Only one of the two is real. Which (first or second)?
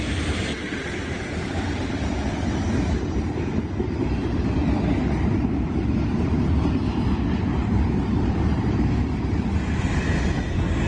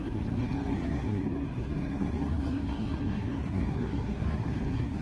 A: first